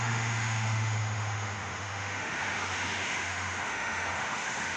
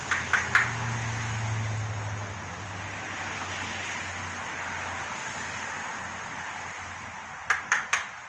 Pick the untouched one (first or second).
second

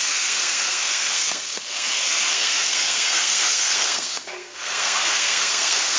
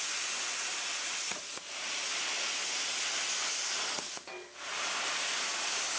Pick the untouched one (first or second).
second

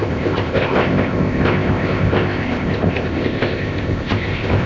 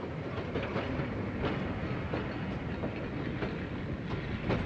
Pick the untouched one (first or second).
second